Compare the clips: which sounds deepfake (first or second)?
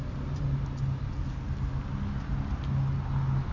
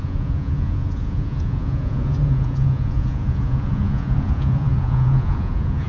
second